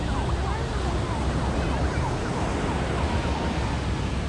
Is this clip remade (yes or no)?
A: no